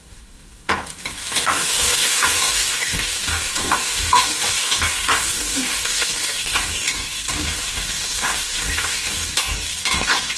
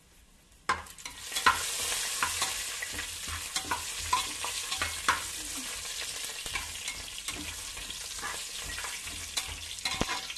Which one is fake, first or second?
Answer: first